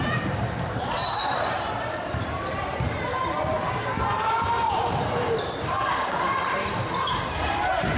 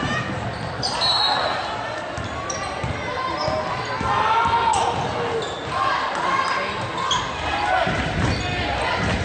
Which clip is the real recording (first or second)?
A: second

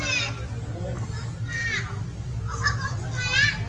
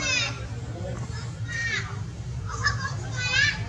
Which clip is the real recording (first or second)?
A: first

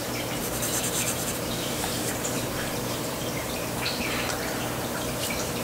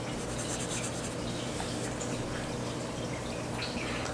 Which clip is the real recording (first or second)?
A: second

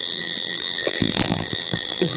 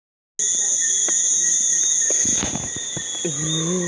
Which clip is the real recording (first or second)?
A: second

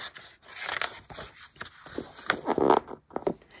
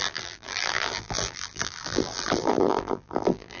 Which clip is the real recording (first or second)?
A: first